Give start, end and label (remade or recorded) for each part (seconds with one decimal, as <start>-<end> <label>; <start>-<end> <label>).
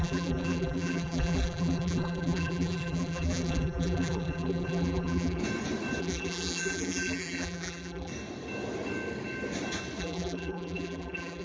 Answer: 0.0-5.4 remade; 5.4-6.0 recorded; 6.0-8.1 remade; 8.1-10.0 recorded; 10.0-11.4 remade